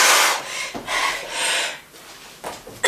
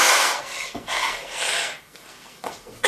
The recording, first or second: first